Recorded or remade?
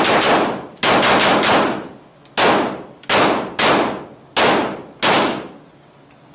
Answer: recorded